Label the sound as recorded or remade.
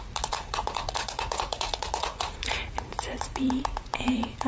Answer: remade